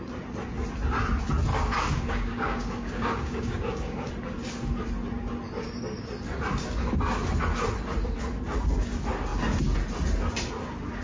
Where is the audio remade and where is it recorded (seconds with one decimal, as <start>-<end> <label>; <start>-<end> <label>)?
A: 0.0-1.5 recorded; 1.5-4.1 remade; 4.1-11.0 recorded